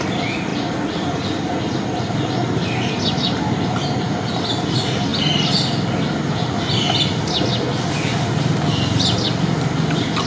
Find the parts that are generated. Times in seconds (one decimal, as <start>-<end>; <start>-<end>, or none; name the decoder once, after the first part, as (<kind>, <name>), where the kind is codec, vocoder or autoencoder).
none